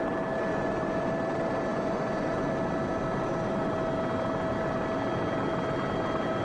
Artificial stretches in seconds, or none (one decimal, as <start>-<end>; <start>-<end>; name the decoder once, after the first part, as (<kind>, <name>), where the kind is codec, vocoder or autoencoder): 0.5-1.1 (vocoder, Vocos); 1.7-2.5